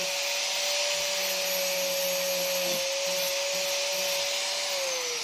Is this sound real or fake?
real